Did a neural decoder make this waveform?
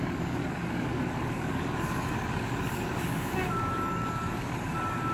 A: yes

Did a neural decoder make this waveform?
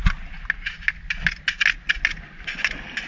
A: no